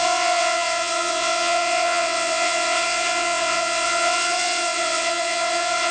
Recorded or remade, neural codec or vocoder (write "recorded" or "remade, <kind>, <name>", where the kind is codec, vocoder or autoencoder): remade, vocoder, WaveNeXt